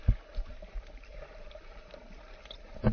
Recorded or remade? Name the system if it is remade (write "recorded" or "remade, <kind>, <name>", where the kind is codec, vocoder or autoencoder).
recorded